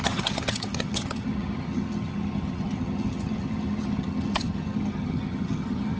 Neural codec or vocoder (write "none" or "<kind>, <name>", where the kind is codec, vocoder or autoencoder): vocoder, HiFi-GAN